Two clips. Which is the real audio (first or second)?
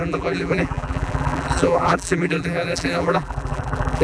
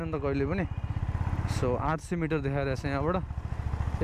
second